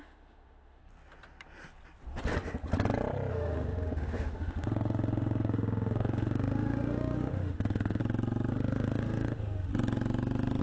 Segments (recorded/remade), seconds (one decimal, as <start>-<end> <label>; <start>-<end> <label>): 0.0-0.8 remade; 0.8-3.3 recorded; 3.3-8.0 remade; 8.0-8.5 recorded; 8.5-9.7 remade; 9.7-10.6 recorded